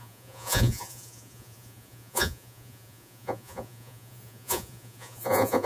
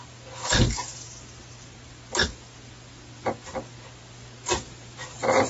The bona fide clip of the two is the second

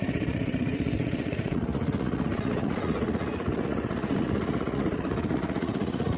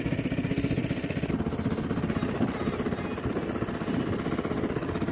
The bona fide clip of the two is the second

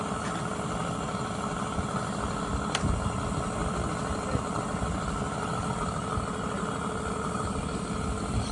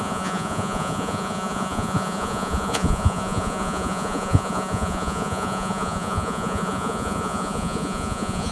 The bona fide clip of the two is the first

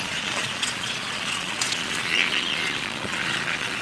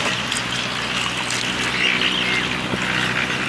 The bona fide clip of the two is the second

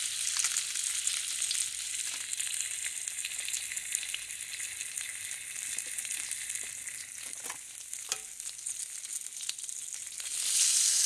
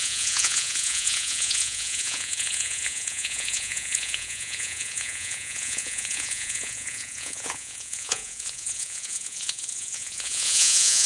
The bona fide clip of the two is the first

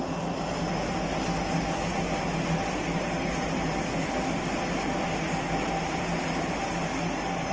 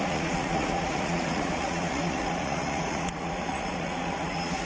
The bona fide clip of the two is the first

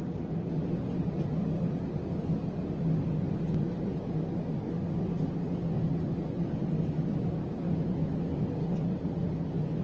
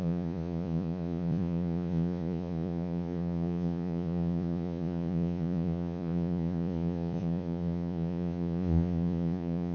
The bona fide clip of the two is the first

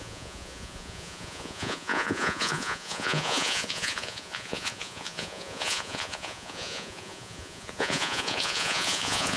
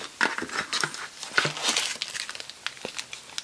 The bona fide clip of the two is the second